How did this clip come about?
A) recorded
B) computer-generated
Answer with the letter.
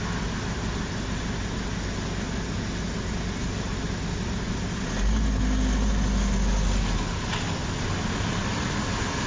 A